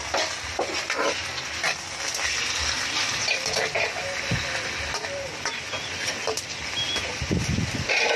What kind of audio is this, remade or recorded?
recorded